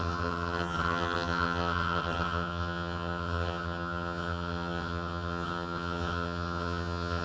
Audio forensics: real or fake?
fake